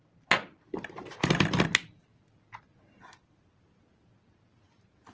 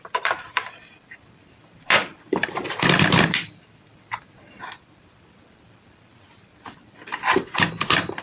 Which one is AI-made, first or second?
second